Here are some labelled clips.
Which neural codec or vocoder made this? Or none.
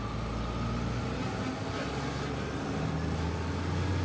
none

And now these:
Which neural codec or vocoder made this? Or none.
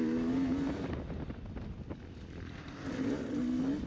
none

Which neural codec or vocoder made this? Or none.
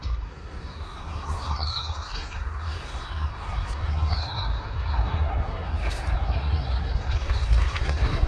codec, SNAC